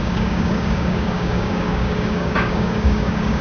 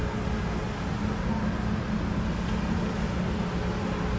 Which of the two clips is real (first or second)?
second